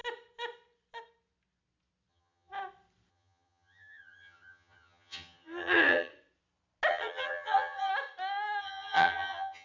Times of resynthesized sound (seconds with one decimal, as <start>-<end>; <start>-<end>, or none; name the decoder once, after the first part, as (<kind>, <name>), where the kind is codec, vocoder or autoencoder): 2.1-2.5 (vocoder, HiFi-GAN); 3.1-6.1; 6.9-7.9; 8.6-9.6